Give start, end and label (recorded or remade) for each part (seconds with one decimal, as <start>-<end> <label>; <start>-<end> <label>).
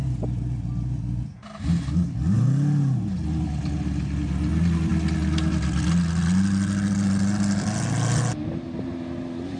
0.0-9.6 recorded